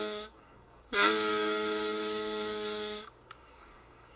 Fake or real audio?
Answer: fake